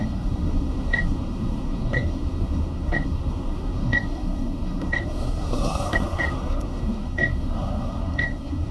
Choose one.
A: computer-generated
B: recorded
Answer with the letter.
A